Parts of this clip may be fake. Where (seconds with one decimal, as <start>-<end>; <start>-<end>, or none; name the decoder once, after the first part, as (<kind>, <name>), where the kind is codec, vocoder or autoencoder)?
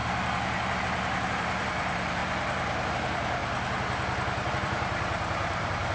0.0-3.4 (vocoder, BigVGAN v2); 4.5-5.9